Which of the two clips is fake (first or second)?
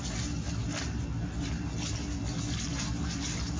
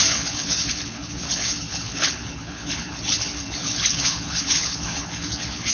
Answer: second